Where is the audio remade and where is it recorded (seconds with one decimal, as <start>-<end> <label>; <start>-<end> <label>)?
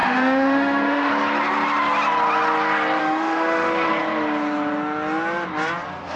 0.0-1.1 remade; 1.1-3.0 recorded; 3.0-3.9 remade; 3.9-6.2 recorded